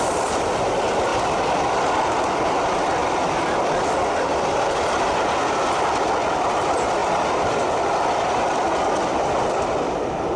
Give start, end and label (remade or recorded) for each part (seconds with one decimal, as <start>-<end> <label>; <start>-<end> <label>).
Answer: 0.0-10.4 recorded

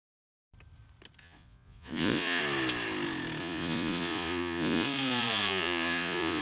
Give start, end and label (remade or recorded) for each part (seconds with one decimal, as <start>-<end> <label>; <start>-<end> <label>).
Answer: 0.0-1.2 recorded; 1.2-2.4 remade; 2.4-3.4 recorded; 3.4-6.4 remade

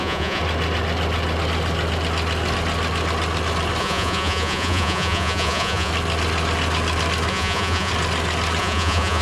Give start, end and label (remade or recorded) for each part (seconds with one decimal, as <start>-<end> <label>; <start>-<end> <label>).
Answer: 0.0-0.4 remade; 0.4-3.8 recorded; 3.8-5.9 remade; 5.9-7.3 recorded; 7.3-7.9 remade; 7.9-8.6 recorded; 8.6-9.2 remade

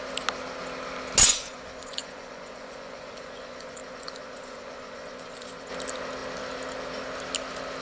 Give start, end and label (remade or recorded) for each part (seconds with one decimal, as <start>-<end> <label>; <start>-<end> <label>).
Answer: 0.0-1.3 recorded; 1.3-5.7 remade; 5.7-7.8 recorded

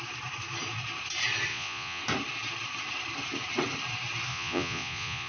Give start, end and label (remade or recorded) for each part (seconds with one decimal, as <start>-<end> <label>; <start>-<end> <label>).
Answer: 0.0-1.5 recorded; 1.5-2.0 remade; 2.0-4.3 recorded; 4.3-5.3 remade

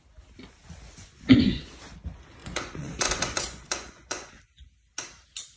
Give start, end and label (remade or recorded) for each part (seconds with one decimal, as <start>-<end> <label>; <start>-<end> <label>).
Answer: 0.0-1.0 recorded; 1.0-1.6 remade; 1.6-2.4 recorded; 2.4-4.3 remade; 4.3-5.6 recorded

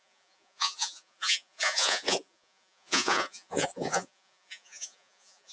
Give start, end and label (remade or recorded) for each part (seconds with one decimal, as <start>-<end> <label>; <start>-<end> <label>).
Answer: 0.0-5.5 remade

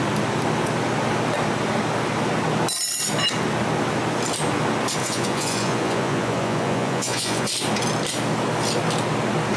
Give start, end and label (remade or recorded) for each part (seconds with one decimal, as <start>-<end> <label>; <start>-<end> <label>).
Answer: 0.0-5.0 recorded; 5.0-7.5 remade; 7.5-9.6 recorded